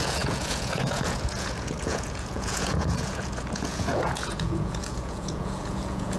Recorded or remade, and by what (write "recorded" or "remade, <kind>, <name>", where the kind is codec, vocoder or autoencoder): remade, vocoder, Vocos